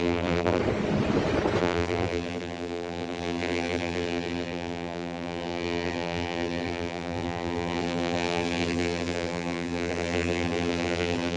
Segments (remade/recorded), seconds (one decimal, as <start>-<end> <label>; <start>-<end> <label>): 0.0-0.6 remade; 0.6-1.6 recorded; 1.6-11.4 remade